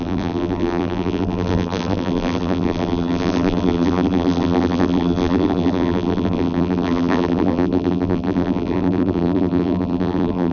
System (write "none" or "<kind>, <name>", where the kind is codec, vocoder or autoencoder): vocoder, BigVGAN v2